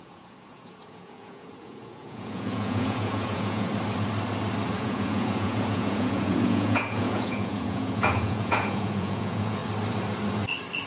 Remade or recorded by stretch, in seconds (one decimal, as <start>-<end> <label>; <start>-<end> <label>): 0.0-3.7 remade; 3.7-4.7 recorded; 4.7-9.6 remade; 9.6-10.9 recorded